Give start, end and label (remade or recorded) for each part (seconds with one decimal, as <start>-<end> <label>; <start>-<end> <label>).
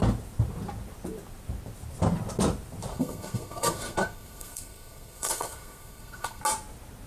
0.0-2.9 recorded; 2.9-6.4 remade; 6.4-7.1 recorded